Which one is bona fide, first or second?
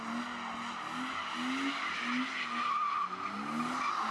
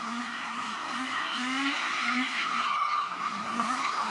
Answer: first